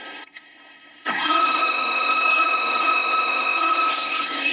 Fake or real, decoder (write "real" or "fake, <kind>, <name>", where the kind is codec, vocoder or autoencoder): fake, codec, SNAC